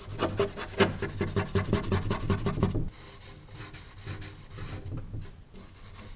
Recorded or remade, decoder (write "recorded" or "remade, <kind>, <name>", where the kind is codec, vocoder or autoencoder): recorded